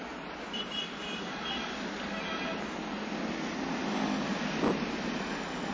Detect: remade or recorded recorded